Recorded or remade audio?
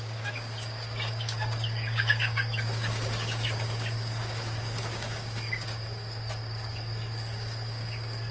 remade